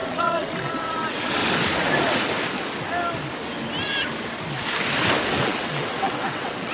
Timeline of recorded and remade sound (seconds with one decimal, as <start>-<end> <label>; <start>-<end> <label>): 0.0-1.4 remade; 1.4-5.4 recorded; 5.4-6.7 remade